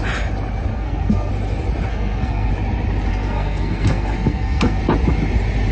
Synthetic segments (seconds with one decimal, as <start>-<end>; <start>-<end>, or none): 0.7-1.3; 1.9-2.5; 3.1-4.8

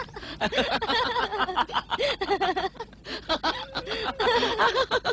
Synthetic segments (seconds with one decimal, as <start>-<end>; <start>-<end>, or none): none